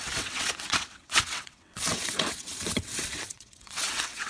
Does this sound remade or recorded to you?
remade